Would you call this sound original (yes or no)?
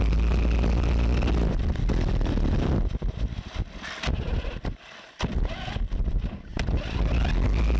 yes